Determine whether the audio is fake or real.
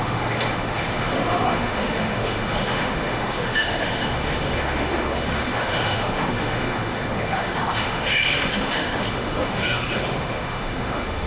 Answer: fake